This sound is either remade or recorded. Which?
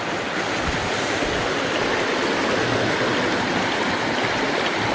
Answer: recorded